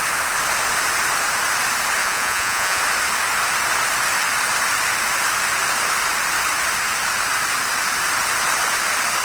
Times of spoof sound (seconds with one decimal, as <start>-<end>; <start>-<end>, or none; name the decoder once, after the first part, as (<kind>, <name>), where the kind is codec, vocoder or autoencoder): 2.0-2.8 (vocoder, Vocos)

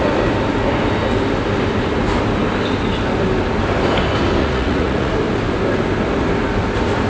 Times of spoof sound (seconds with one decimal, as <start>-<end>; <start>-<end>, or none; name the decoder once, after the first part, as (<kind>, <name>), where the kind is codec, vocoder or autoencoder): 4.4-5.1 (vocoder, Vocos)